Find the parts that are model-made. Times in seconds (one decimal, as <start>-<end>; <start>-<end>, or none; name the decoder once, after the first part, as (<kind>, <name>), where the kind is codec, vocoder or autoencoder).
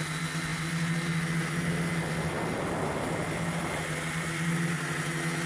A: none